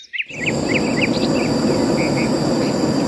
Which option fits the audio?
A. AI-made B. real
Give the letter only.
B